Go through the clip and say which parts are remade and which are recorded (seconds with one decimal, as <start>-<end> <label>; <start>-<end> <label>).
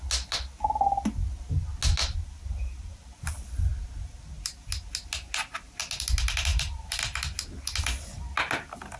0.0-2.0 recorded; 2.0-3.3 remade; 3.3-6.5 recorded; 6.5-7.0 remade; 7.0-9.0 recorded